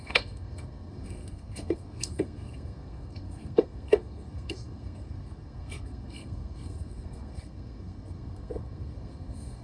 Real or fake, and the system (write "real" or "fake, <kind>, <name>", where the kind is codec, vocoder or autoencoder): fake, codec, SNAC